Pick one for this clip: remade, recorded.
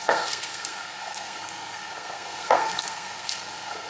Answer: remade